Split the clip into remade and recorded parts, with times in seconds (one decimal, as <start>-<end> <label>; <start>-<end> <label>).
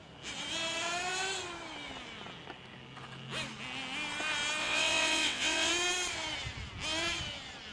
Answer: 0.0-4.6 recorded; 4.6-5.7 remade; 5.7-7.7 recorded